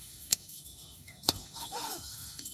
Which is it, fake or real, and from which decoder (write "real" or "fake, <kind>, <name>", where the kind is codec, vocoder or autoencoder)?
fake, autoencoder, DAC-VAE